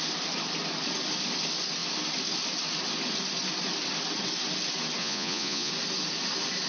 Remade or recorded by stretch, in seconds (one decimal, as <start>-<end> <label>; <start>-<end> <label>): 0.0-5.0 recorded; 5.0-5.7 remade; 5.7-6.7 recorded

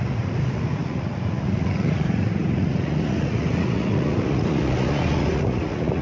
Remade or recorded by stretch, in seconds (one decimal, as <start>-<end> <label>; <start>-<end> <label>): 0.0-6.0 remade

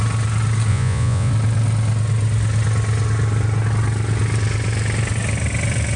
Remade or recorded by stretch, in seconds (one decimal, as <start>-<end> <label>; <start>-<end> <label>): 0.0-0.7 recorded; 0.7-1.3 remade; 1.3-6.0 recorded

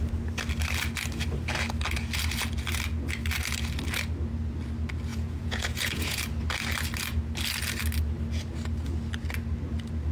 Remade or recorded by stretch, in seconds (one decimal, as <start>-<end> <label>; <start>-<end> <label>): 0.0-5.1 recorded; 5.1-6.2 remade; 6.2-10.1 recorded